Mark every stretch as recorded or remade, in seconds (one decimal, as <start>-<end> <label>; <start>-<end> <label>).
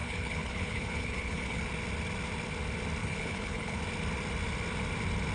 0.0-1.6 remade; 1.6-3.0 recorded; 3.0-3.8 remade; 3.8-5.3 recorded